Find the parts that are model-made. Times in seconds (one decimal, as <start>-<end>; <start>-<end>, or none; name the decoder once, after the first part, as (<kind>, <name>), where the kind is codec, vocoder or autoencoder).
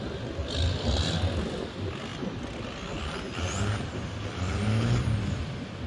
none